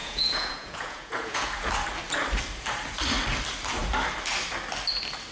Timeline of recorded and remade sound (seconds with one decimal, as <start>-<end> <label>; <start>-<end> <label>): 0.0-1.7 remade; 1.7-5.3 recorded